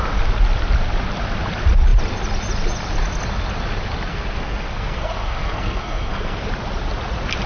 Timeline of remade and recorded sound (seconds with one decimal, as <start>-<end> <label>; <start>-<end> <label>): 0.0-4.1 recorded; 4.1-6.5 remade; 6.5-7.5 recorded